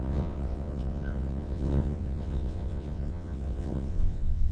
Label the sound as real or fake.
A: fake